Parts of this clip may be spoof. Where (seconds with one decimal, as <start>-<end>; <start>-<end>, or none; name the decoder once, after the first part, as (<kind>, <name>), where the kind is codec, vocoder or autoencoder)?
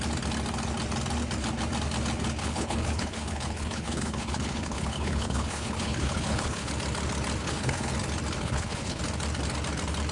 2.4-6.7 (codec, HILCodec); 7.4-7.9; 8.4-9.0